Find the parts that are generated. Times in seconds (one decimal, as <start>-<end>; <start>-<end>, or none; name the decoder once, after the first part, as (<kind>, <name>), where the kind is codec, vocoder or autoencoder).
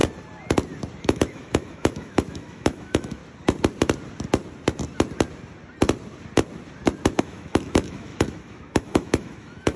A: 1.0-3.2 (autoencoder, DAC-VAE); 7.2-9.8